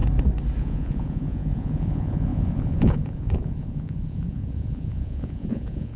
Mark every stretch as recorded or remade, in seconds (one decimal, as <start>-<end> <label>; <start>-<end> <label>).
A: 0.0-0.6 recorded; 0.6-6.0 remade